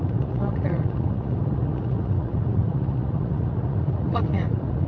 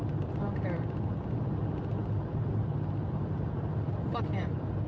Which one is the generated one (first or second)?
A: first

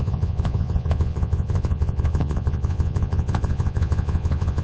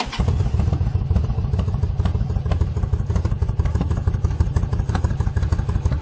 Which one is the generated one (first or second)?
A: first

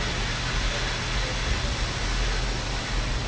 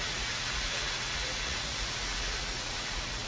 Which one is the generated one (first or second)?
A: second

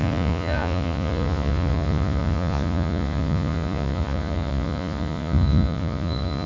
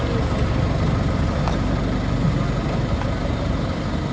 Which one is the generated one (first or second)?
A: first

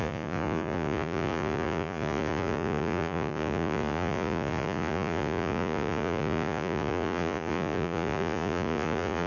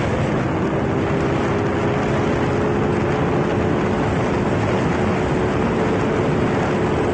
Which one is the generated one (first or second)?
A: first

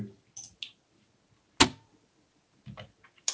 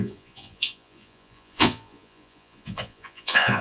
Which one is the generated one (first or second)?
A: second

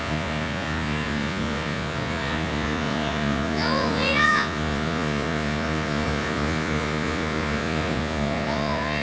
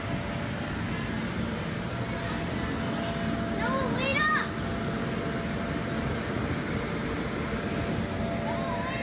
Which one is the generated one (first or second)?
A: first